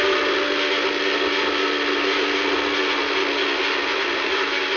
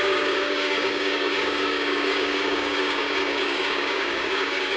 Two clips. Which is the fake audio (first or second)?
second